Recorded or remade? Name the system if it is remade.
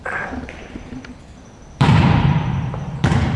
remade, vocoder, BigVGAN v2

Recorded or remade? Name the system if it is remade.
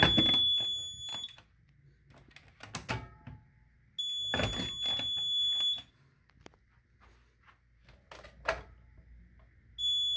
recorded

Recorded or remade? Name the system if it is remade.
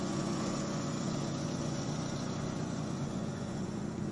remade, vocoder, Vocos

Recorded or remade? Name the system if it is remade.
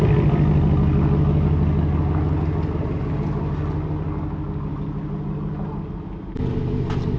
recorded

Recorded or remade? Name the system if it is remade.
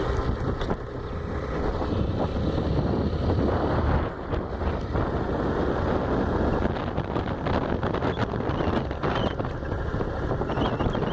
recorded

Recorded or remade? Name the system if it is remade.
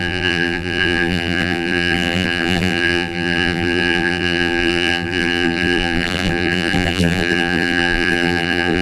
remade, vocoder, BigVGAN v2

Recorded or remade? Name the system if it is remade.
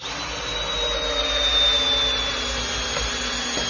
recorded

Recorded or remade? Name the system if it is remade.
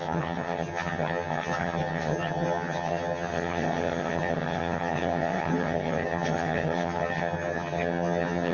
remade, vocoder, HiFi-GAN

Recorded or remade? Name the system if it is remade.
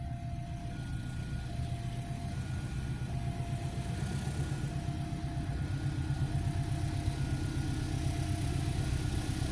recorded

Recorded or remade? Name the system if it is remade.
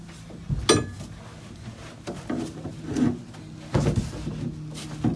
recorded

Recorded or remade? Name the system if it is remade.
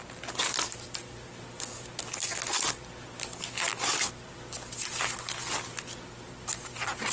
recorded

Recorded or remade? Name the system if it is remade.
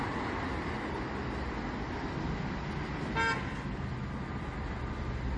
recorded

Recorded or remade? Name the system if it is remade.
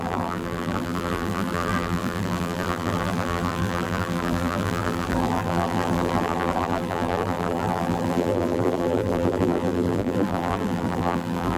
remade, vocoder, BigVGAN v2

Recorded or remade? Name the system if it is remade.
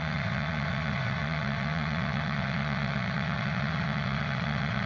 remade, vocoder, WaveNeXt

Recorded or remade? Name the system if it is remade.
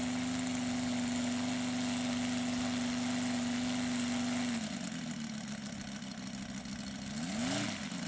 recorded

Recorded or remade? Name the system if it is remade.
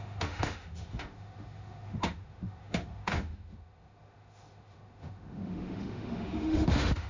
remade, autoencoder, DAC-VAE